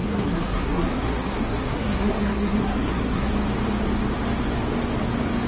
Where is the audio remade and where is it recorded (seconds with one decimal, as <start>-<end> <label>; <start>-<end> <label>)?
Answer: 0.0-3.3 remade; 3.3-5.5 recorded